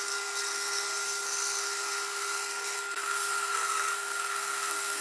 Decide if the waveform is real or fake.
fake